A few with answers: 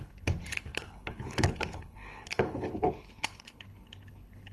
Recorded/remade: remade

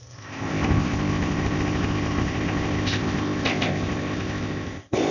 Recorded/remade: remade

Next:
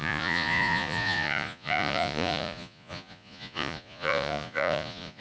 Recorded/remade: remade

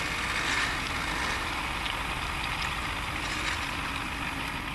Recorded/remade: recorded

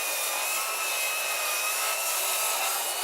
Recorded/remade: recorded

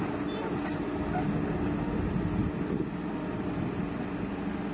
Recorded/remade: recorded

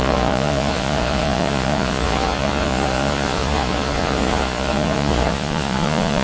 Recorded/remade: remade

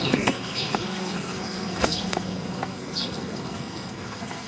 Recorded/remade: remade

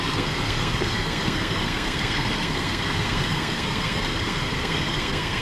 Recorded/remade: remade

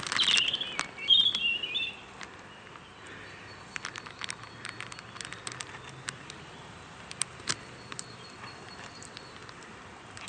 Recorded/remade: recorded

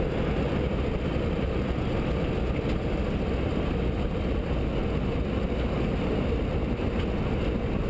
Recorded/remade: recorded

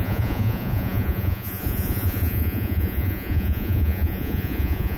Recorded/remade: remade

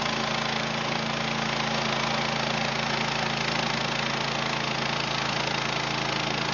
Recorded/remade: recorded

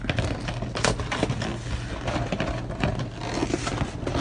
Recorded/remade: recorded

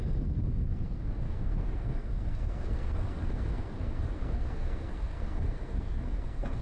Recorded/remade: remade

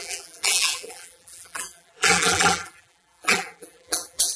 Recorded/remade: remade